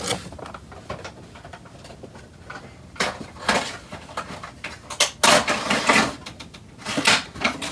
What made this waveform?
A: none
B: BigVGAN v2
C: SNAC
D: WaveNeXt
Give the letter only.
A